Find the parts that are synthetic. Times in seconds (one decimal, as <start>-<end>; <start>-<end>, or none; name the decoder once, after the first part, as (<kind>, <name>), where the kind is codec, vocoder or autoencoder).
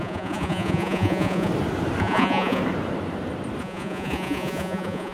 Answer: 0.0-1.5 (vocoder, Vocos); 2.0-2.6; 3.6-5.1